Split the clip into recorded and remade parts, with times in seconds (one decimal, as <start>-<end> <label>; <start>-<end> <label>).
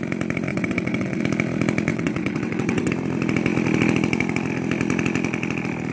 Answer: 0.0-0.5 recorded; 0.5-1.2 remade; 1.2-1.9 recorded; 1.9-2.9 remade; 2.9-5.9 recorded